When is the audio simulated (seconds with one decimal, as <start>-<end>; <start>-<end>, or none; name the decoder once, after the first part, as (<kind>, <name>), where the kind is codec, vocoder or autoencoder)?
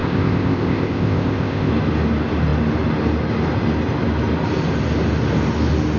0.0-1.7 (codec, ZipCodec)